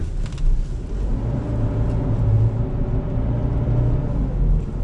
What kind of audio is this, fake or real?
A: real